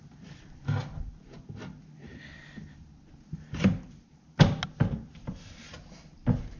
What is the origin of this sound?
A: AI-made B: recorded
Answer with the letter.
B